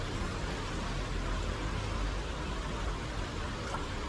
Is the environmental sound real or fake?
real